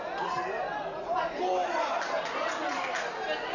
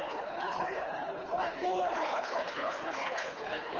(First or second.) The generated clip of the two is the second